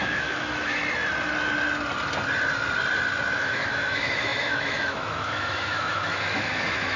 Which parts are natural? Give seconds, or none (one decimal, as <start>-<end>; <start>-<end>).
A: 0.8-3.3